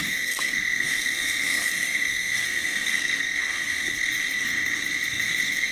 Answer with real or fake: fake